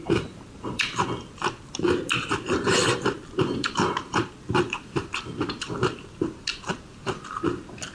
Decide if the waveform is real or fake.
fake